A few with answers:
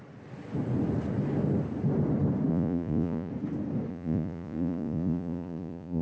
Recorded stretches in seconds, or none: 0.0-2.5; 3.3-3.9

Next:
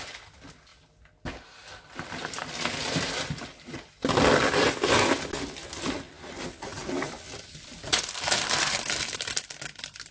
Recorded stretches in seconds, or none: 0.0-10.1

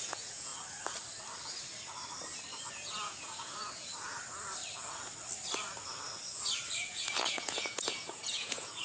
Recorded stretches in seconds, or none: 0.5-2.7; 3.9-6.8

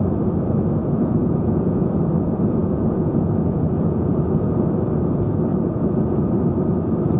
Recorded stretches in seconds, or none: 0.0-0.8; 2.0-2.6; 4.2-7.2

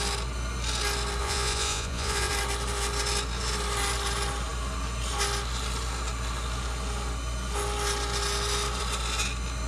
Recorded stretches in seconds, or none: 0.0-1.2; 2.3-9.7

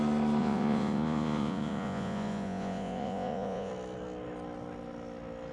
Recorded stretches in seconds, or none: 0.0-0.4; 3.7-5.5